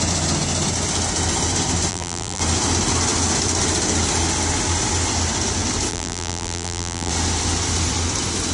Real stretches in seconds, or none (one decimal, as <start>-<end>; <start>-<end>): 0.0-1.9; 2.4-5.9; 7.1-8.5